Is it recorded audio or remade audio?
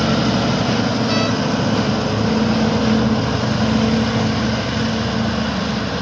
recorded